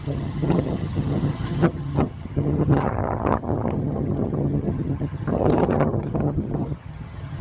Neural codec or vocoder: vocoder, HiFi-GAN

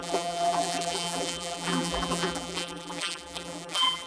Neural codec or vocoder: vocoder, BigVGAN v2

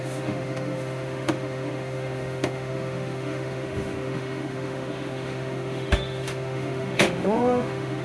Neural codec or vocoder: autoencoder, DAC-VAE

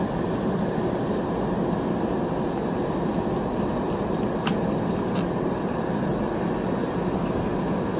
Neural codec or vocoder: none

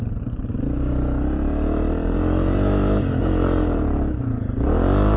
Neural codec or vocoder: none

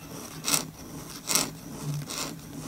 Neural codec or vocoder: none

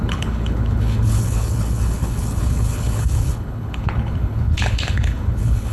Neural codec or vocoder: codec, HILCodec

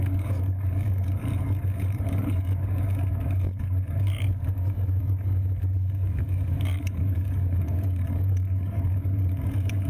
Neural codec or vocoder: codec, DAC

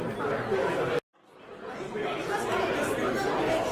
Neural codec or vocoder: none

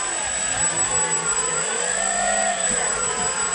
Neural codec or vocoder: none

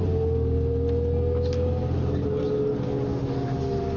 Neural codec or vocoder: none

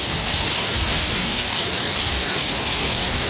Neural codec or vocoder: codec, DAC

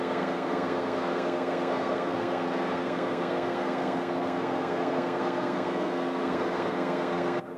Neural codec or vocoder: codec, SNAC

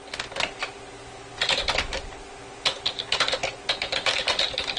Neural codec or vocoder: none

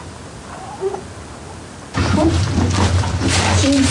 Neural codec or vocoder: none